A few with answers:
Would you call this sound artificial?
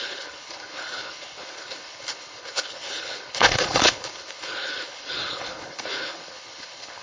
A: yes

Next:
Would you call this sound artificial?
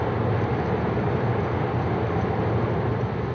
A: no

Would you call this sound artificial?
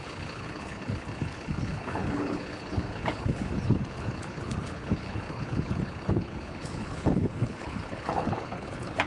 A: yes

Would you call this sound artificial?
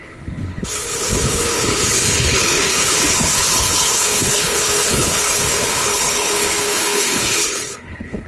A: yes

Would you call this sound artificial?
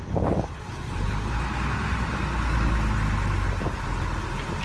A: no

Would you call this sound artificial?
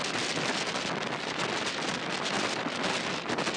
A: no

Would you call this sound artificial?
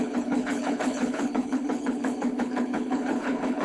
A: yes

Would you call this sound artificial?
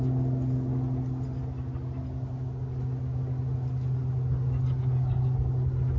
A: no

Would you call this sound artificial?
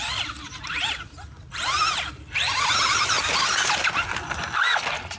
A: no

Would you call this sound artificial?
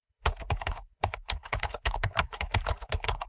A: yes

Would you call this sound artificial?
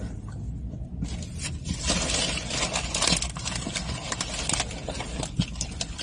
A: no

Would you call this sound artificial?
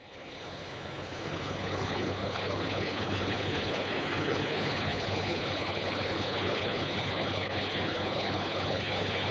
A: yes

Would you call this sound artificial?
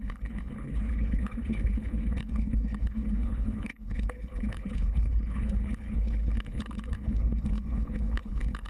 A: yes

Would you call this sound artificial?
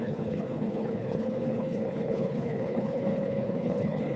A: yes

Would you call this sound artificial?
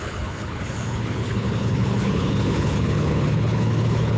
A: yes